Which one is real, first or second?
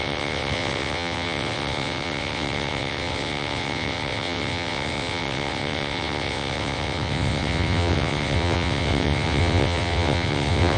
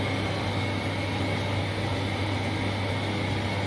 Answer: second